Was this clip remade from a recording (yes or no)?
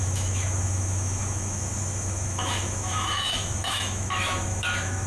yes